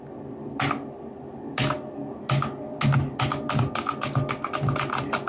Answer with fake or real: real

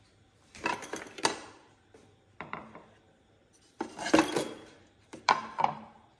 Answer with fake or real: fake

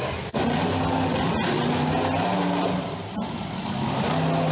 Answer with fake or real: real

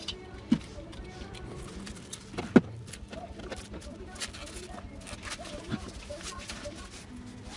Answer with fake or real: real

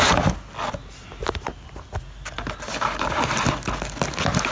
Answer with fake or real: real